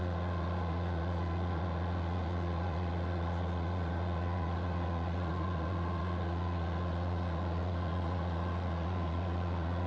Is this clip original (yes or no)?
no